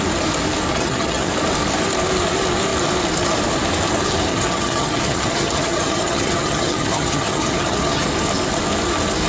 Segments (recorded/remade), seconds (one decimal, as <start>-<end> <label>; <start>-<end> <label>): 0.0-0.7 recorded; 0.7-1.3 remade; 1.3-4.3 recorded; 4.3-8.1 remade; 8.1-9.3 recorded